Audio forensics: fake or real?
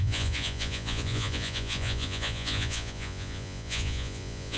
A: fake